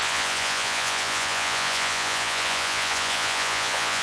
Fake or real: fake